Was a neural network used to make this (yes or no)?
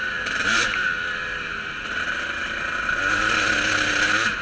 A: no